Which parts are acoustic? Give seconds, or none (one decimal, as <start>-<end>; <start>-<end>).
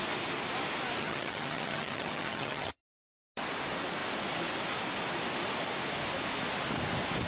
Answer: 0.0-1.0; 2.8-7.3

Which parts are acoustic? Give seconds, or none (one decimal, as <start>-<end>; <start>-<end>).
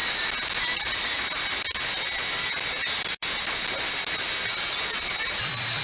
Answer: 0.0-5.8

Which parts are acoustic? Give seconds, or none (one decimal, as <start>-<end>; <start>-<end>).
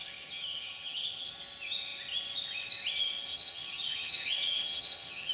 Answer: 1.3-3.3